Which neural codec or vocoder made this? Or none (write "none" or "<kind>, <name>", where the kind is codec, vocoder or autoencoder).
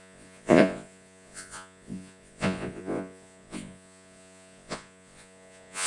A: vocoder, Vocos